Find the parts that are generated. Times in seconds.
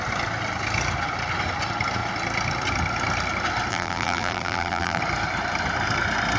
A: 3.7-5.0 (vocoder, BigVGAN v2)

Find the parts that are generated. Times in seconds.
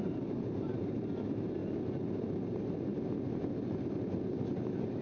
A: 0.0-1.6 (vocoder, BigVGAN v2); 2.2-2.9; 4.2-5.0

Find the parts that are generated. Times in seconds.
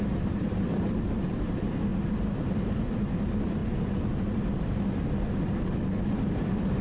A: 0.0-1.9 (vocoder, BigVGAN v2); 2.8-3.6